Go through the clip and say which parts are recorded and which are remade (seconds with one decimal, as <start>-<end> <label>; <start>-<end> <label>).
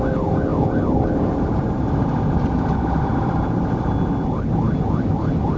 0.0-0.5 recorded; 0.5-3.7 remade; 3.7-5.6 recorded